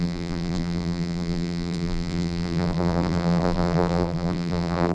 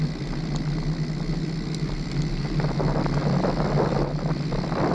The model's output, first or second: first